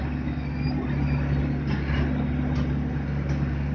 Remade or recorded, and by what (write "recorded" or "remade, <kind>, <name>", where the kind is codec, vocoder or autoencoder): recorded